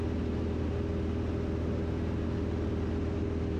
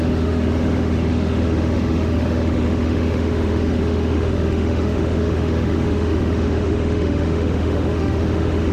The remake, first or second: second